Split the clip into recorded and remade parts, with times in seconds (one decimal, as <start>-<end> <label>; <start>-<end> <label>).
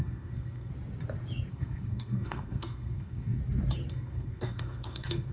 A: 0.0-0.7 remade; 0.7-1.5 recorded; 1.5-3.4 remade; 3.4-3.9 recorded; 3.9-5.3 remade